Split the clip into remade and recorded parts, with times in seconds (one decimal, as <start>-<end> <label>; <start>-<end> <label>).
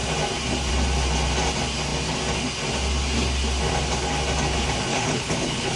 0.0-4.9 recorded; 4.9-5.8 remade